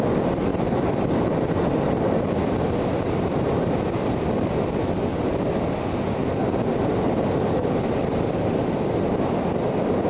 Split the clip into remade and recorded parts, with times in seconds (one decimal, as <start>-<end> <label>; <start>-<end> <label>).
0.0-0.5 recorded; 0.5-4.8 remade; 4.8-7.6 recorded; 7.6-8.6 remade; 8.6-10.1 recorded